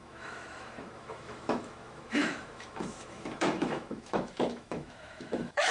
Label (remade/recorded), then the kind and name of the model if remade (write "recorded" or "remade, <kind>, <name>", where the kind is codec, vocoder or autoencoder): remade, autoencoder, DAC-VAE